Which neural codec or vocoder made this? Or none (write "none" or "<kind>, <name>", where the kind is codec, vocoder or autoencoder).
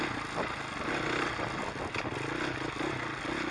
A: none